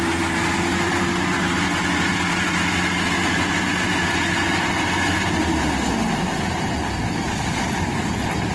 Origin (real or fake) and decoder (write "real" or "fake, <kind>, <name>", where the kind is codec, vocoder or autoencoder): real